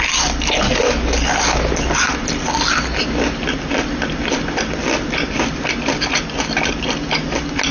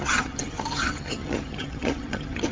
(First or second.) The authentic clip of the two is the first